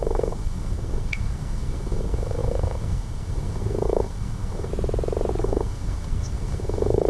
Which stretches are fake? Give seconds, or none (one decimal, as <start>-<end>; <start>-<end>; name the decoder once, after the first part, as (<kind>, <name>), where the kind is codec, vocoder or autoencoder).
0.0-4.7 (codec, SNAC); 5.4-7.1